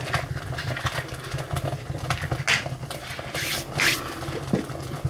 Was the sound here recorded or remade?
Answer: recorded